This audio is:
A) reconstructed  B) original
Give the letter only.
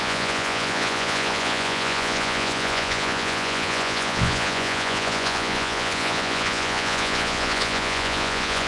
A